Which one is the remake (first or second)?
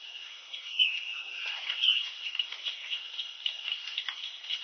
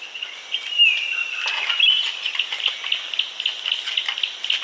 first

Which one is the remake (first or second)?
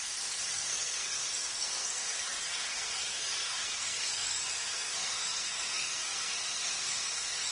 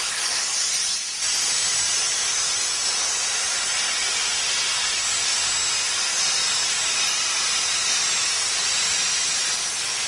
first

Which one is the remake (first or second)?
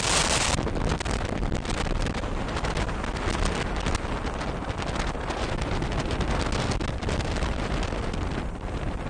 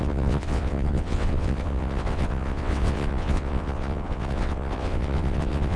second